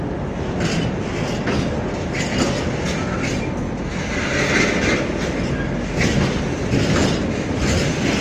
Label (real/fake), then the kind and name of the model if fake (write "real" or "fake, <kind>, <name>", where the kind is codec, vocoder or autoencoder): real